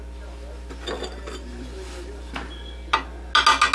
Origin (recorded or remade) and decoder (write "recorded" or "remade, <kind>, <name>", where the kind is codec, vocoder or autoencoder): recorded